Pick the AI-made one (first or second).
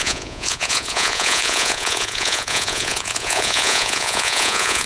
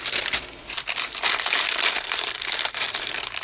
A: first